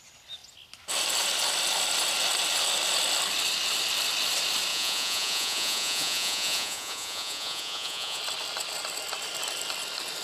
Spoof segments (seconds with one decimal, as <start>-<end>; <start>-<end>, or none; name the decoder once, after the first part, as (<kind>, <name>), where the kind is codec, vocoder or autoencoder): 4.7-8.2 (vocoder, Vocos)